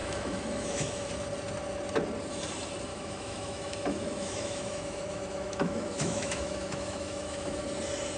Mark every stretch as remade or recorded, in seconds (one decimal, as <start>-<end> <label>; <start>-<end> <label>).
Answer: 0.0-1.1 remade; 1.1-2.9 recorded; 2.9-7.6 remade; 7.6-8.2 recorded